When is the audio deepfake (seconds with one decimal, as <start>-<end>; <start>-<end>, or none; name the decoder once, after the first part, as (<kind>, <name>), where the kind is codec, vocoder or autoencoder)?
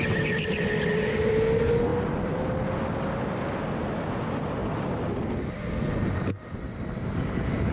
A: none